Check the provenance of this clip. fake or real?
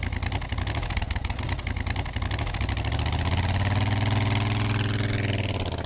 real